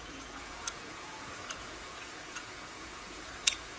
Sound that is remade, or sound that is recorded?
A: remade